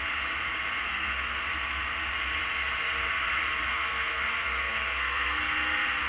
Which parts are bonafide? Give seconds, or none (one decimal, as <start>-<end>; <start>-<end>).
0.0-0.8; 1.4-3.7; 5.4-6.1